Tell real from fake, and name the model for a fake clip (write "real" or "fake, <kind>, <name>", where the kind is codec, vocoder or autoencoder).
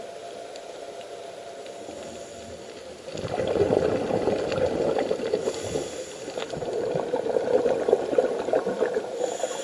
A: real